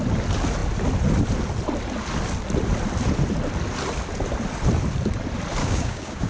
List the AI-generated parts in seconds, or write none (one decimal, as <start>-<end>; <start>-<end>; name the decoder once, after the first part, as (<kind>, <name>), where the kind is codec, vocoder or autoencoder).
5.6-6.3 (codec, DAC)